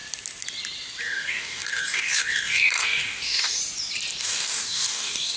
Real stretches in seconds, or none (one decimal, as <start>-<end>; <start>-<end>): 0.0-1.0; 3.6-4.2